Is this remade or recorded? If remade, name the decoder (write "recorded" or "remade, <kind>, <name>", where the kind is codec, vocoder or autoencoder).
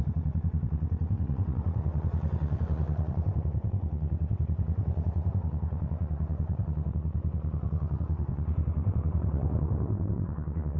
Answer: remade, vocoder, WaveNeXt